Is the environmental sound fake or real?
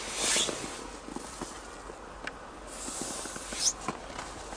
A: real